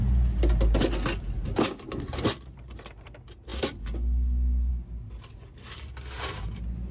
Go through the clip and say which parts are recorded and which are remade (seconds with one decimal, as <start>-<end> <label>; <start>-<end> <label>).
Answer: 0.0-6.9 recorded

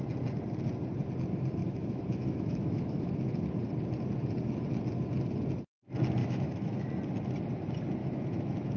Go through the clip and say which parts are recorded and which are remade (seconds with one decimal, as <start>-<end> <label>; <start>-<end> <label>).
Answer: 0.0-1.6 recorded; 1.6-3.1 remade; 3.1-6.2 recorded; 6.2-6.9 remade; 6.9-8.0 recorded; 8.0-8.8 remade

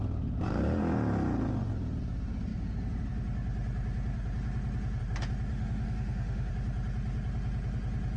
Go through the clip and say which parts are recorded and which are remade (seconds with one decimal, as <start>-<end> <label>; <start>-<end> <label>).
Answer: 0.0-5.5 recorded; 5.5-6.5 remade; 6.5-8.2 recorded

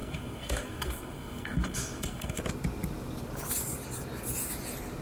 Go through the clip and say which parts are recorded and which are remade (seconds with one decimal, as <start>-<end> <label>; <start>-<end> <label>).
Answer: 0.0-2.4 remade; 2.4-5.0 recorded

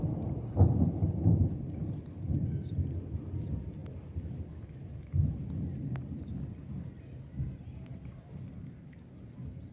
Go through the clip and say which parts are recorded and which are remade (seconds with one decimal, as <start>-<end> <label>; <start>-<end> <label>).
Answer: 0.0-1.8 recorded; 1.8-2.4 remade; 2.4-9.7 recorded

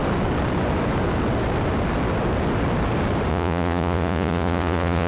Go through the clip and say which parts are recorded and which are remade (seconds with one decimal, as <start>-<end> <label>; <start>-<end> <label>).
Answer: 0.0-3.3 recorded; 3.3-5.1 remade